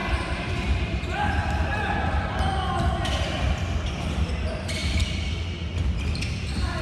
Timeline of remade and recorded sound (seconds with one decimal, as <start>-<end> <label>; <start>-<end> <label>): 0.0-1.2 remade; 1.2-6.8 recorded